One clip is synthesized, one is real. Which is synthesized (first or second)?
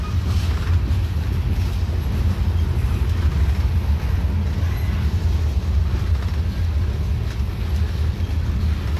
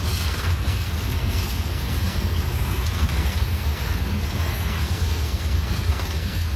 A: second